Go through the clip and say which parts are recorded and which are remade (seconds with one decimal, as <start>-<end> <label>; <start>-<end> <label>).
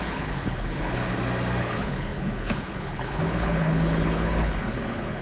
0.0-1.0 remade; 1.0-1.6 recorded; 1.6-5.2 remade